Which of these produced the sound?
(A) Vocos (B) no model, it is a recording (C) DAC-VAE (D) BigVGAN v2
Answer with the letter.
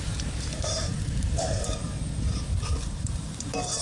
D